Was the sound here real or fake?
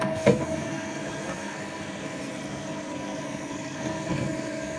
fake